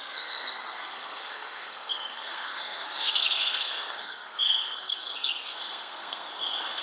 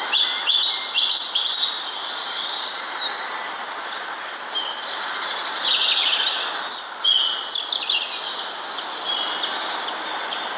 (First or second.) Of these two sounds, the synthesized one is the first